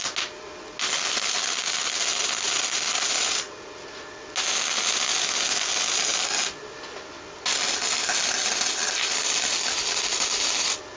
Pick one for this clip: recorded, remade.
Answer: recorded